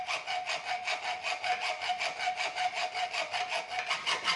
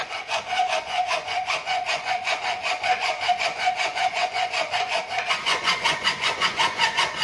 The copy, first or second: second